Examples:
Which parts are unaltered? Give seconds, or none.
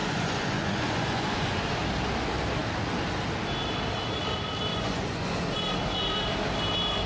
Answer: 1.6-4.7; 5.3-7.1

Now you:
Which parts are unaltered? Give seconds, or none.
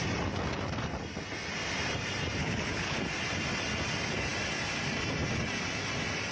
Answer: 0.0-2.4; 3.0-6.3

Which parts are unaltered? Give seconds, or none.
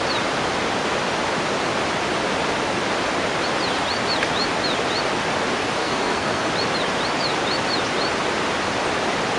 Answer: 0.0-5.8; 6.5-9.4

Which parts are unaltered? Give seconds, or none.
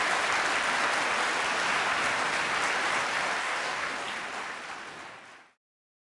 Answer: 0.0-3.4; 3.9-6.1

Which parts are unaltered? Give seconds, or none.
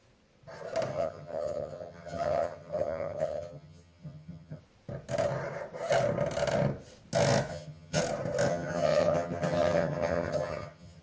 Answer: 0.0-0.9; 4.6-7.5; 8.0-8.5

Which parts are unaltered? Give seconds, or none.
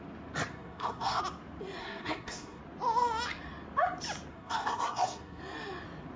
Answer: 0.0-0.5; 1.2-1.8; 2.6-4.3; 5.4-6.2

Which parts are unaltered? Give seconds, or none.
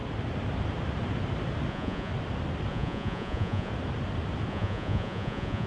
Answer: 0.0-1.7; 2.1-2.7; 3.7-4.5